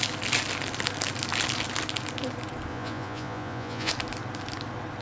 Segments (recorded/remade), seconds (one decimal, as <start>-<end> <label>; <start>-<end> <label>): 0.0-2.7 recorded; 2.7-3.9 remade; 3.9-5.0 recorded